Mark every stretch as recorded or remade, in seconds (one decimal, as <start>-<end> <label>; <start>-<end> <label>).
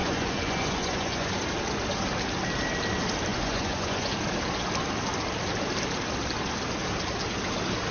0.0-1.3 remade; 1.3-3.3 recorded; 3.3-4.1 remade; 4.1-7.9 recorded